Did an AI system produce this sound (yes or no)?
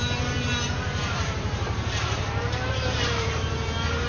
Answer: yes